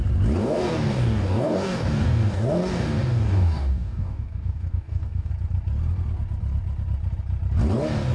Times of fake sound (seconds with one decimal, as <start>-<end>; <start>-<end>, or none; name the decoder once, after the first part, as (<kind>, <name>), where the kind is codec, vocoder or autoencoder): 0.4-5.3 (codec, DAC)